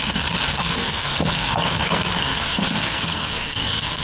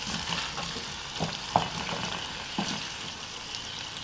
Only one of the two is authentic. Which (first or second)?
second